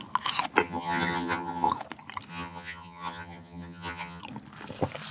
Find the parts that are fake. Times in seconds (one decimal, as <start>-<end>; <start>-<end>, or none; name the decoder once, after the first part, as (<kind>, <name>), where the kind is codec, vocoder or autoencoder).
0.6-1.7 (vocoder, HiFi-GAN); 2.3-4.2